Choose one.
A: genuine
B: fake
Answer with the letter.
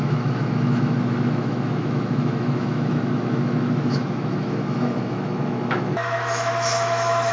B